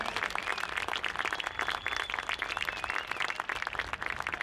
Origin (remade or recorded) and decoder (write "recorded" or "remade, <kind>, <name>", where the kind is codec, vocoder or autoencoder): recorded